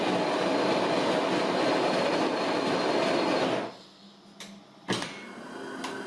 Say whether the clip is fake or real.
real